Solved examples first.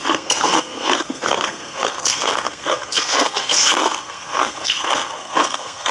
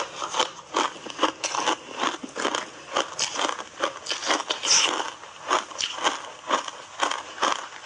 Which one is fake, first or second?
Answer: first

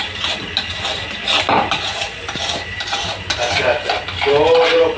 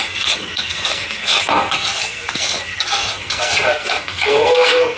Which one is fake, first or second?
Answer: second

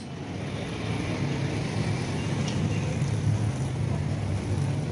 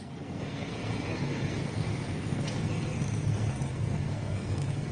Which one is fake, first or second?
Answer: second